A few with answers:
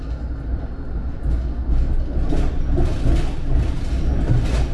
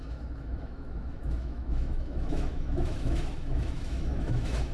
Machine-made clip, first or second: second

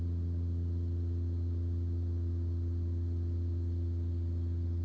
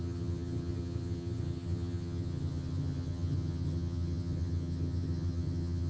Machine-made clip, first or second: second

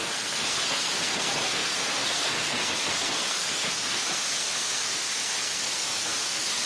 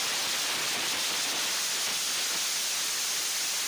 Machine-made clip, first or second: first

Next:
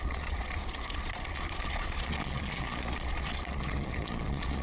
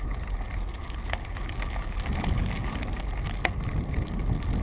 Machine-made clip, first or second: first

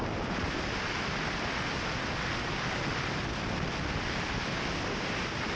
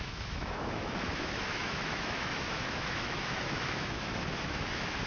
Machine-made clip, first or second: second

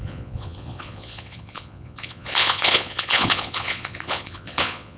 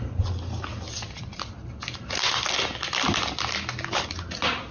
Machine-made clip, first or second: first